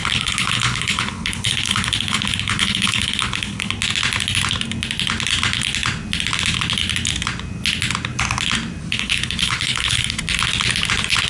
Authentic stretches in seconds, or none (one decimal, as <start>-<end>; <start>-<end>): 3.7-8.8; 10.2-11.3